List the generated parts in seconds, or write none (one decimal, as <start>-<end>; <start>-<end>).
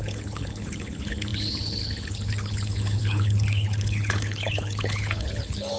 0.0-5.8